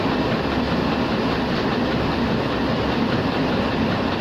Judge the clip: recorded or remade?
recorded